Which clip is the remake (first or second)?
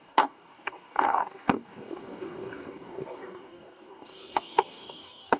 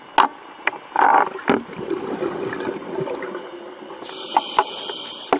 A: first